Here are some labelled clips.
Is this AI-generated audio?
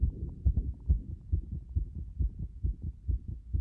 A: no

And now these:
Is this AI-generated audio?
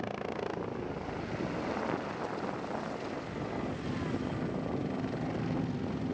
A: no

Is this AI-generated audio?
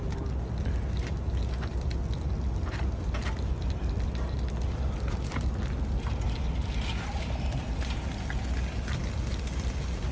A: no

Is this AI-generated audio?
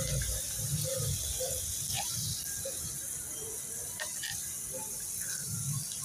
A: no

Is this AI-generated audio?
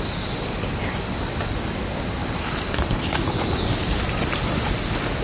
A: no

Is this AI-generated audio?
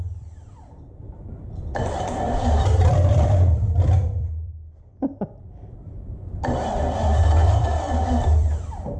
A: yes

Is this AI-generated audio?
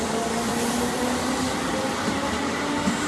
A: no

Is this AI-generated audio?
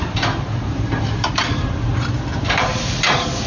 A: yes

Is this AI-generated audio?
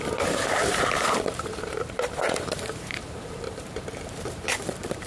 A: yes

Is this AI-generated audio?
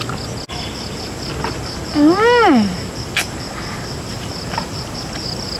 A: no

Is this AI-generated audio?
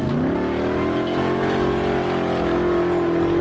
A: no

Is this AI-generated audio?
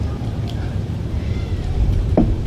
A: yes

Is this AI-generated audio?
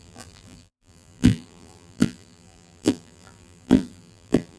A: yes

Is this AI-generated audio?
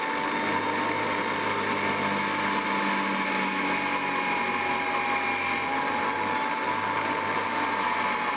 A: no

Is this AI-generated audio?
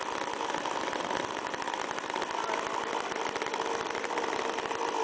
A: yes